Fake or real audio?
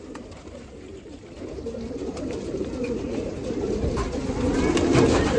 real